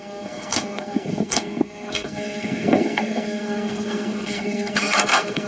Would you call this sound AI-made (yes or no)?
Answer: yes